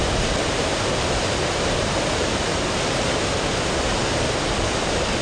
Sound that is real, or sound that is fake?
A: real